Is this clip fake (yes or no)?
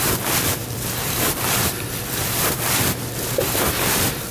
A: yes